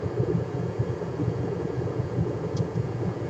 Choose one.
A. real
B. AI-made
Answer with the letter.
B